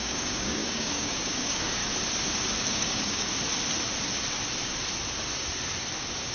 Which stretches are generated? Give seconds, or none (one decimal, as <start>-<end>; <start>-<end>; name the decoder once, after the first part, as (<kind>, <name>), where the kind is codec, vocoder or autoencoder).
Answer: 0.0-1.8 (codec, DAC); 2.6-3.3